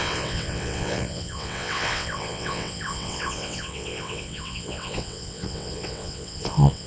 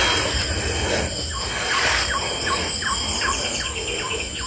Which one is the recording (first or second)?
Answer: second